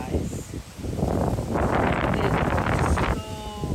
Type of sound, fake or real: real